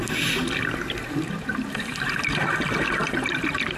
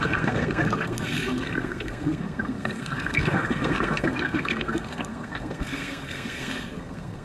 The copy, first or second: second